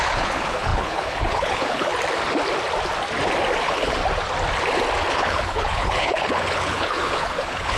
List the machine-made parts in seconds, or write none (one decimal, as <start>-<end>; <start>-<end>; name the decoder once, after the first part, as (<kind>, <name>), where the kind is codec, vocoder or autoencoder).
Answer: 0.0-1.9 (codec, HILCodec); 3.6-4.0; 5.1-7.8